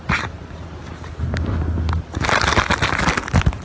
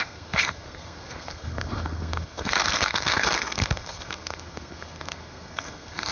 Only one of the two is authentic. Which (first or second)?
first